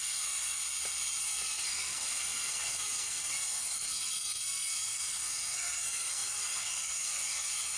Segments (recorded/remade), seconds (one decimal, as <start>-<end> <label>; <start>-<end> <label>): 0.0-0.6 remade; 0.6-1.2 recorded; 1.2-7.8 remade